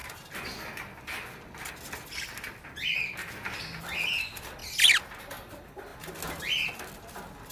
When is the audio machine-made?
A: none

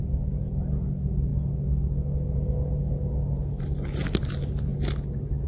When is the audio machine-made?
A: none

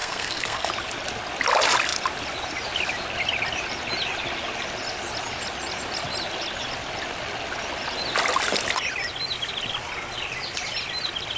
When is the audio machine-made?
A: 0.0-0.7 (codec, SNAC)

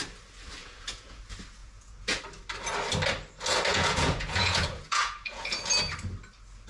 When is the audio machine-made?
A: 0.6-1.2 (vocoder, Vocos); 1.6-2.2; 3.7-5.6

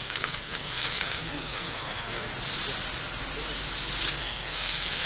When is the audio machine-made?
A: 0.0-2.3 (codec, SNAC); 4.2-5.1

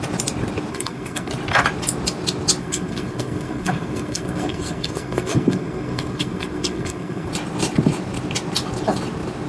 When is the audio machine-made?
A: 0.7-1.3 (codec, SNAC); 2.6-7.3

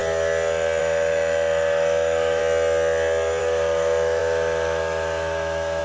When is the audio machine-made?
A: 0.8-2.4 (autoencoder, DAC-VAE); 3.4-5.8